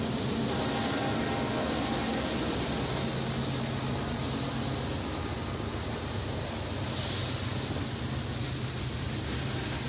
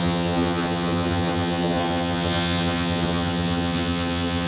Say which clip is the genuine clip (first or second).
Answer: first